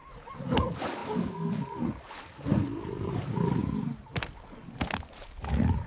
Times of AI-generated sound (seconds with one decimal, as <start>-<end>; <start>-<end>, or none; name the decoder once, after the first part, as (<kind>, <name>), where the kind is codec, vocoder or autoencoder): none